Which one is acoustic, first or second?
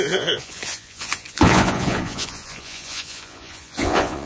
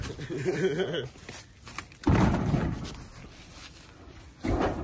second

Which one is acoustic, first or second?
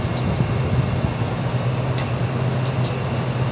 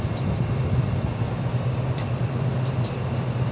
first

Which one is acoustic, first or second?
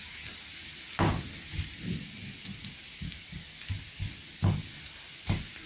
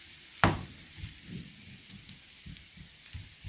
first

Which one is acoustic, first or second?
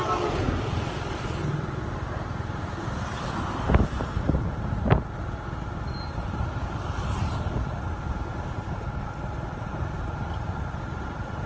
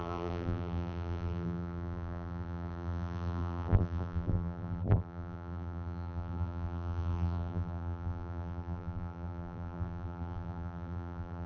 first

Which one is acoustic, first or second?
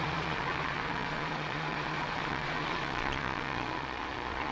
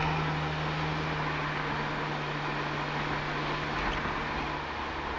second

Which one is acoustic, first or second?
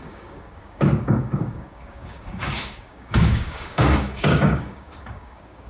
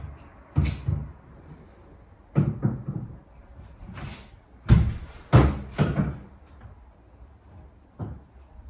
second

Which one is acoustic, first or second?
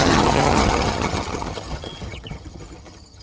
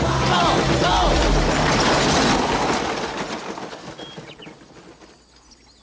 second